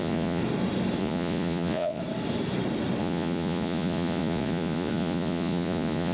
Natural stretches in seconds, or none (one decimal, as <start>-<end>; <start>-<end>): 0.4-1.0; 2.0-3.0